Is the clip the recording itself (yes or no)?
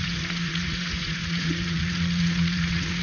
no